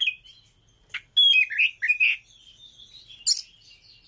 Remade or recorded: recorded